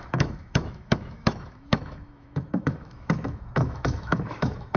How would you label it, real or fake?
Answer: fake